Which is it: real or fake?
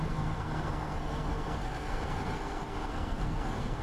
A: fake